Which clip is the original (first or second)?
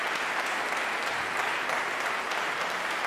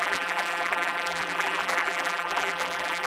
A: first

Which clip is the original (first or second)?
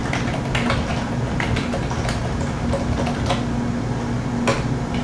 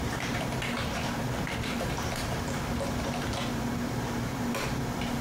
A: first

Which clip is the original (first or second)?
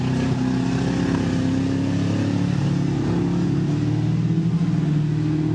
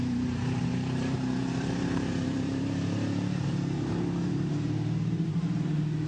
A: first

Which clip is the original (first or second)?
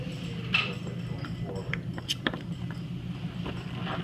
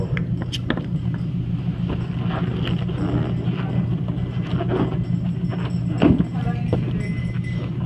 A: second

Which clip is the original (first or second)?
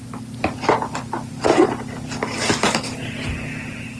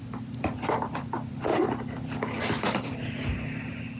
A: first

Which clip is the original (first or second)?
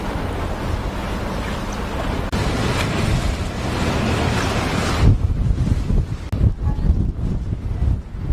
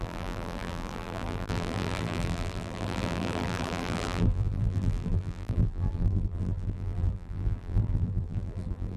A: first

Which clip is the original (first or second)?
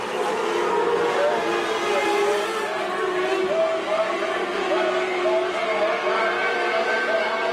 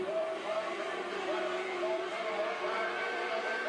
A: first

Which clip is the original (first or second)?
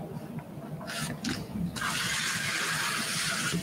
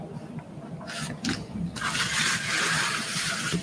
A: first